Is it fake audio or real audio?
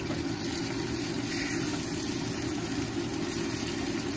real